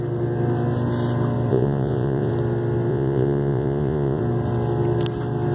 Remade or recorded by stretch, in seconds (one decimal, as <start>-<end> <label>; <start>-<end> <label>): 0.0-1.5 recorded; 1.5-2.3 remade; 2.3-2.9 recorded; 2.9-4.2 remade; 4.2-5.5 recorded